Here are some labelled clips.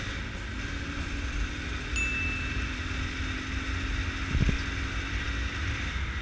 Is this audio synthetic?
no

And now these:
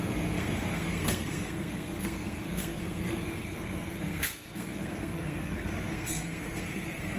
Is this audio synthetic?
yes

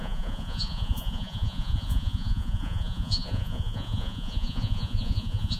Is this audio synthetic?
yes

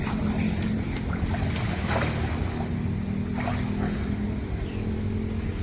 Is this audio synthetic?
no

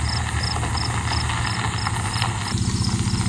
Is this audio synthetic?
no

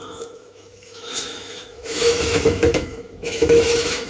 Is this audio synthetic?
yes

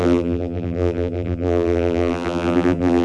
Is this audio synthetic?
yes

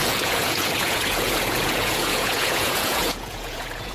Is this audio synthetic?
yes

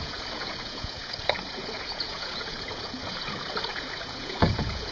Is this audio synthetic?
yes